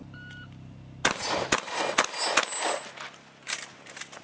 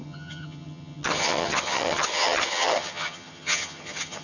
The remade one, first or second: second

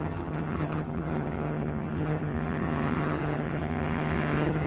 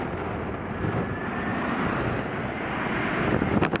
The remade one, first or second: first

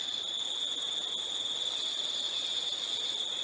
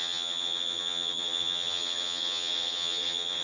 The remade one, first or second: second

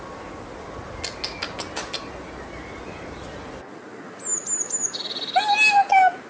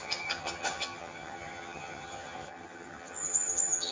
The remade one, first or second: second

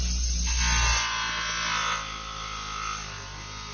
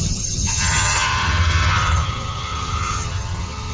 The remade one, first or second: second